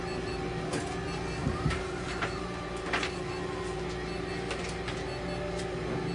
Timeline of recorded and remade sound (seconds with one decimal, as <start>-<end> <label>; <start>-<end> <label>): 0.0-1.4 recorded; 1.4-3.4 remade; 3.4-6.1 recorded